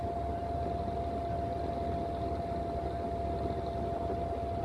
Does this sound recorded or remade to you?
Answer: recorded